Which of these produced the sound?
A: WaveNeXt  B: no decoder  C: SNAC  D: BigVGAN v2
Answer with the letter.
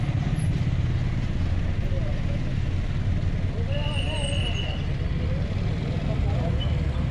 B